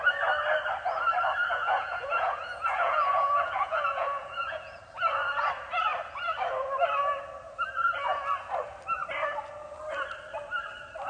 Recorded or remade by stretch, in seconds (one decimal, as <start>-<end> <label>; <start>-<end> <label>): 0.0-1.5 recorded; 1.5-4.8 remade; 4.8-11.1 recorded